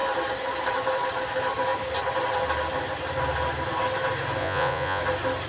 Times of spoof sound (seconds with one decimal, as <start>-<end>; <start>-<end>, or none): 4.4-5.0